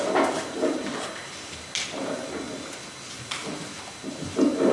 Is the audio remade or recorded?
recorded